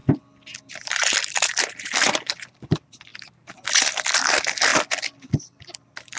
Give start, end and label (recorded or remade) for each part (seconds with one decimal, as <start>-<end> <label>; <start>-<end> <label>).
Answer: 0.0-0.7 recorded; 0.7-3.1 remade; 3.1-3.7 recorded; 3.7-6.2 remade